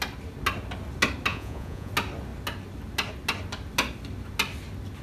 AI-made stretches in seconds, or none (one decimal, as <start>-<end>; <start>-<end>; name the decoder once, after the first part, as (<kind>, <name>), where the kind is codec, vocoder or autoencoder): 1.3-1.9 (vocoder, Vocos)